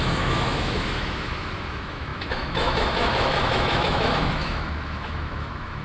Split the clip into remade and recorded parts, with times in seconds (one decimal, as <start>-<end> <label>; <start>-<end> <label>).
0.0-5.8 remade